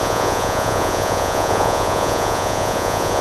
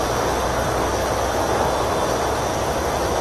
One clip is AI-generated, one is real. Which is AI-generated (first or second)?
first